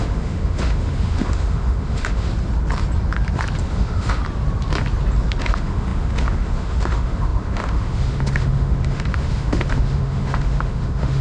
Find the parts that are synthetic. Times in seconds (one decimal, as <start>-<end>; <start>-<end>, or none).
0.0-2.3; 3.6-4.2; 5.4-11.2